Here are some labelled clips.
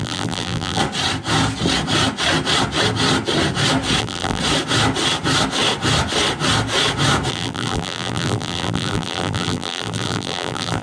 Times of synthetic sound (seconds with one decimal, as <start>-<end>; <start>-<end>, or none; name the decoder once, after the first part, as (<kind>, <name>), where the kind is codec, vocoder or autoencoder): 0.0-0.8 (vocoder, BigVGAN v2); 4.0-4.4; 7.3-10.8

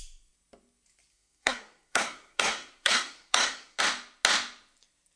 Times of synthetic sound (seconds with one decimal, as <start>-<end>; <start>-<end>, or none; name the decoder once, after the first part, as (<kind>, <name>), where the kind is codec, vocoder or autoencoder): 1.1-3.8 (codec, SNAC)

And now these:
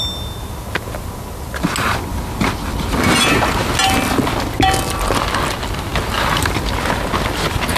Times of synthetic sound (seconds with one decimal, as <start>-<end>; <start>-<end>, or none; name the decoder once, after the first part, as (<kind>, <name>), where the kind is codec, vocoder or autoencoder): none

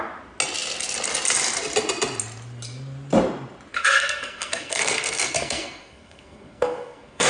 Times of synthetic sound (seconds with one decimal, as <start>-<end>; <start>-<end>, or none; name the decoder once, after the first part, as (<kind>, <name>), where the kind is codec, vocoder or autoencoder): 3.7-7.3 (codec, SNAC)

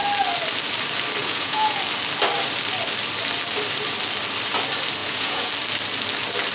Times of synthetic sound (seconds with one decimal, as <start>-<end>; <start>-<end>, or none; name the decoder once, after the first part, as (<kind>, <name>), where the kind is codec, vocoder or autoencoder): 1.2-1.8 (vocoder, Vocos); 5.0-5.5